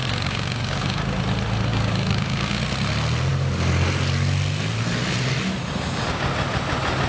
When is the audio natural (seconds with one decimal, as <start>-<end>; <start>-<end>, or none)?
1.0-1.7; 2.6-7.1